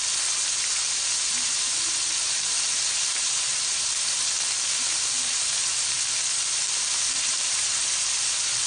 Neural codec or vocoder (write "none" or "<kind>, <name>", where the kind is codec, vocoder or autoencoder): none